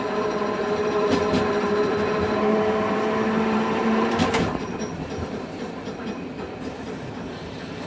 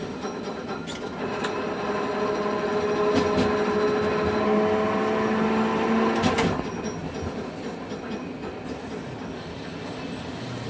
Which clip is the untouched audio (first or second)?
second